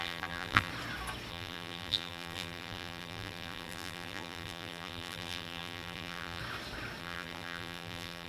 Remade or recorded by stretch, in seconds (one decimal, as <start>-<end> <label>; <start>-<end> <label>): 0.0-0.7 remade; 0.7-1.3 recorded; 1.3-6.4 remade; 6.4-7.0 recorded; 7.0-8.3 remade